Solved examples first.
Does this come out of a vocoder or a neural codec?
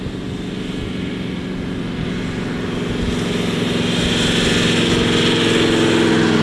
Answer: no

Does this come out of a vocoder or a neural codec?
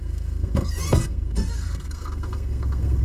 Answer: yes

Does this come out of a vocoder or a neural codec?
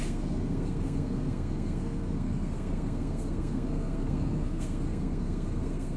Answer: yes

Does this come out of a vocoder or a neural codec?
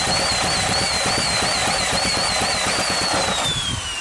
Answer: no